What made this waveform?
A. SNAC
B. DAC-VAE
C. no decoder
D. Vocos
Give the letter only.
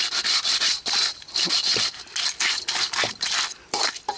C